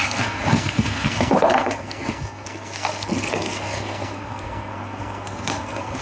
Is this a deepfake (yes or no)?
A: yes